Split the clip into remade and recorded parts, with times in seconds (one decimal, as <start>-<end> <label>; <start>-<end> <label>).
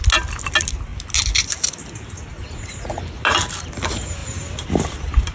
0.0-2.3 recorded; 2.3-3.0 remade; 3.0-5.3 recorded